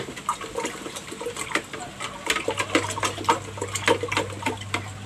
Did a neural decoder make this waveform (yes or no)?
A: no